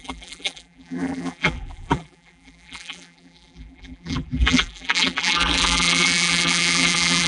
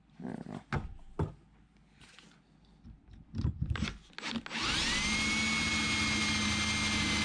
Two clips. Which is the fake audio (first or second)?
first